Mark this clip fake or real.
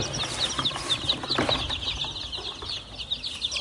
real